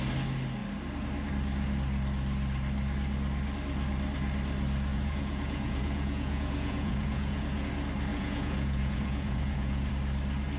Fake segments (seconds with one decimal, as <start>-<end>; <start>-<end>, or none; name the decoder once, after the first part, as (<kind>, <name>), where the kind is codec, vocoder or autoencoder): 4.9-7.7 (vocoder, Vocos); 8.1-9.9